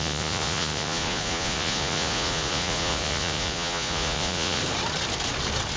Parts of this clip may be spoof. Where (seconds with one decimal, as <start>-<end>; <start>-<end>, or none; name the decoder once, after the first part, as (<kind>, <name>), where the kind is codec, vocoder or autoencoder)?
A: 0.0-4.6 (vocoder, Vocos)